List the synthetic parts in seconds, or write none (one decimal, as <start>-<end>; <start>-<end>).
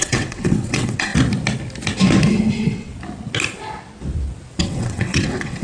0.0-1.1; 2.5-2.9; 4.6-5.6